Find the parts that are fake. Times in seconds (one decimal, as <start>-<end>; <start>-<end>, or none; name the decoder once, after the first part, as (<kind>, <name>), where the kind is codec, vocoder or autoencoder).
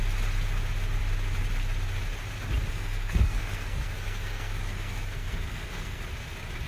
2.7-6.0 (codec, SNAC)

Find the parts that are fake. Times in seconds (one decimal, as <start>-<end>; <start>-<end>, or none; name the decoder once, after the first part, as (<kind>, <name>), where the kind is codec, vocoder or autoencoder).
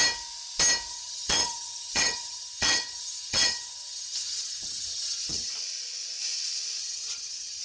0.9-5.5 (vocoder, HiFi-GAN); 6.8-7.6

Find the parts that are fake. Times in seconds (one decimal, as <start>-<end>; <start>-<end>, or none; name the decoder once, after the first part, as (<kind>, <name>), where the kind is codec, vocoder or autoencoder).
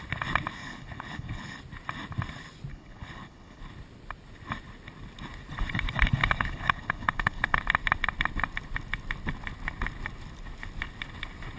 0.6-1.6 (codec, HILCodec); 2.7-3.6; 6.2-7.6